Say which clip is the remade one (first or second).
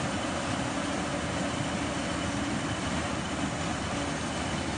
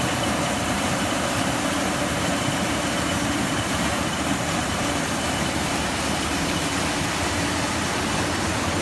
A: second